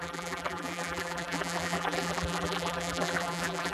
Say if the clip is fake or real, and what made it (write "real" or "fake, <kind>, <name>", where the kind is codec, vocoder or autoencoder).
fake, vocoder, BigVGAN v2